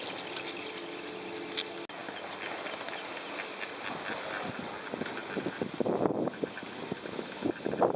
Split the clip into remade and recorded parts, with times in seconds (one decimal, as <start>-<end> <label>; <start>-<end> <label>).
0.0-8.0 recorded